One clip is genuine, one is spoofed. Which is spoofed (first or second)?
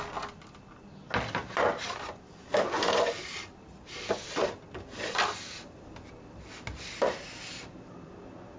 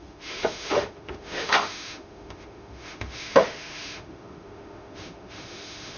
second